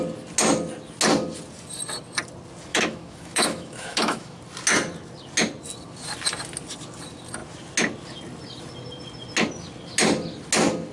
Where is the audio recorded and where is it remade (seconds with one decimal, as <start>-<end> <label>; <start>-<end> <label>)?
0.0-2.7 recorded; 2.7-4.4 remade; 4.4-10.9 recorded